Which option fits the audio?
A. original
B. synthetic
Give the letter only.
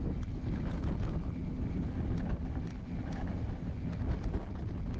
A